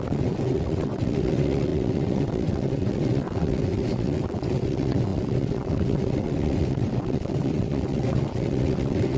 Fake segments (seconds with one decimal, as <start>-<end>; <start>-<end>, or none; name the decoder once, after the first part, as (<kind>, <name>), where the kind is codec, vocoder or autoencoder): 0.0-9.2 (vocoder, WaveNeXt)